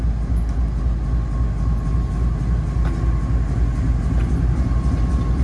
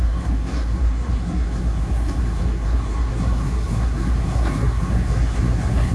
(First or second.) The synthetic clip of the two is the second